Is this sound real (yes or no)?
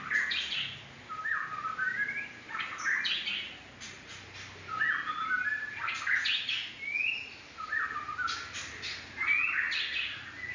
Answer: yes